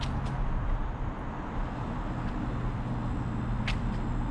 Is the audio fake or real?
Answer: real